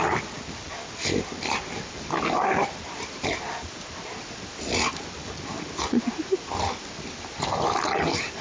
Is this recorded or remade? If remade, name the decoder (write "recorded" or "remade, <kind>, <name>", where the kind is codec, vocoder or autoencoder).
recorded